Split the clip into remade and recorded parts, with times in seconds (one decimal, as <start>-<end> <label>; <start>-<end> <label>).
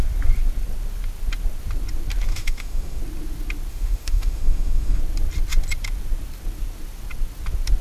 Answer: 0.0-2.3 recorded; 2.3-3.0 remade; 3.0-3.7 recorded; 3.7-5.0 remade; 5.0-7.8 recorded